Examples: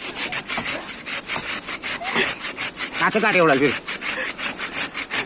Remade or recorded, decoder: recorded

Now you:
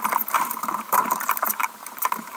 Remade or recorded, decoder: remade, vocoder, BigVGAN v2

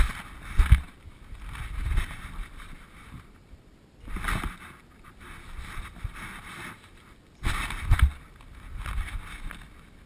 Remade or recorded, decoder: recorded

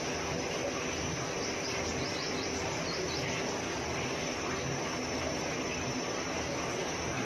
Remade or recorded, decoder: remade, vocoder, BigVGAN v2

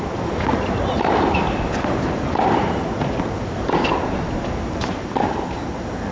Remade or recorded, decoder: recorded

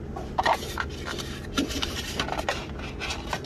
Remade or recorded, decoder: recorded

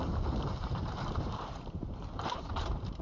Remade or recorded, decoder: remade, vocoder, BigVGAN v2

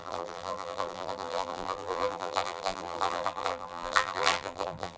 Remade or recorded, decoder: remade, vocoder, BigVGAN v2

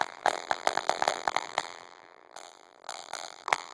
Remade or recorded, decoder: remade, vocoder, BigVGAN v2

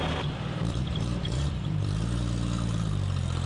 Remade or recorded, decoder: remade, vocoder, BigVGAN v2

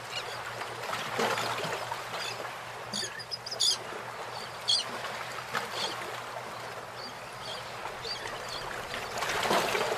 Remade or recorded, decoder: recorded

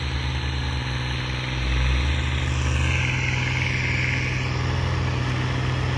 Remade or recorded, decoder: recorded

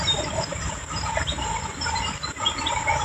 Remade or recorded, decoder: remade, vocoder, BigVGAN v2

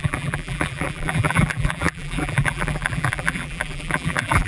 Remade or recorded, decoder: remade, vocoder, BigVGAN v2